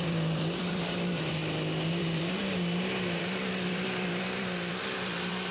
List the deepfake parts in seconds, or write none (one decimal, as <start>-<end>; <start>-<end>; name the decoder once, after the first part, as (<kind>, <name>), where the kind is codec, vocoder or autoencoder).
0.0-1.4 (vocoder, BigVGAN v2); 2.0-2.4; 3.2-5.5